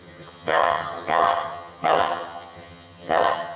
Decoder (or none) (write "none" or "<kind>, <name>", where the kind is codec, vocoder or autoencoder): vocoder, HiFi-GAN